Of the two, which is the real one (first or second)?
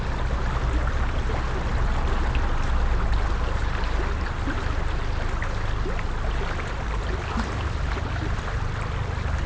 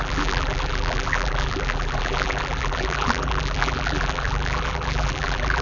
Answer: first